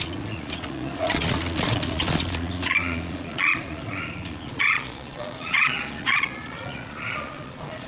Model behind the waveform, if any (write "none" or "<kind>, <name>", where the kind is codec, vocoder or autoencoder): vocoder, Vocos